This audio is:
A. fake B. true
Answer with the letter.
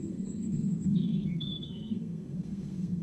A